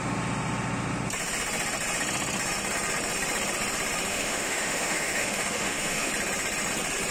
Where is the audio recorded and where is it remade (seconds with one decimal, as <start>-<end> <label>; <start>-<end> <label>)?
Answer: 0.0-4.1 recorded; 4.1-6.1 remade; 6.1-7.1 recorded